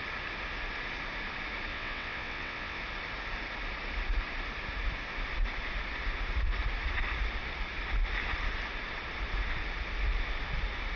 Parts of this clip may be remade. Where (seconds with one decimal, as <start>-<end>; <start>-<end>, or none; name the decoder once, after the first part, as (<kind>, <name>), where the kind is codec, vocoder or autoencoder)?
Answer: 1.7-2.8 (vocoder, WaveNeXt)

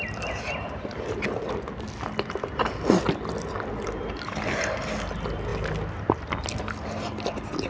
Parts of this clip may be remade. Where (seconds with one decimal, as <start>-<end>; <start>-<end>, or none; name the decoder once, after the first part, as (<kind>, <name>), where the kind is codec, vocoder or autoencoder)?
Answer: none